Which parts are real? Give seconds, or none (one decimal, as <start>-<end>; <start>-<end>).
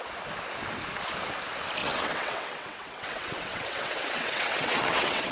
0.0-1.8